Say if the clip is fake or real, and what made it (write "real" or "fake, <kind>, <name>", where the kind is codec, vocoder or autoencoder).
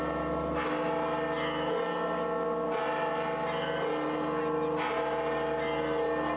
real